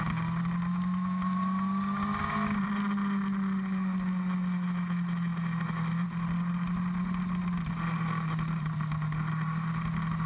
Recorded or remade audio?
recorded